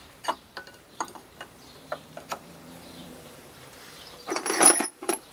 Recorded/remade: remade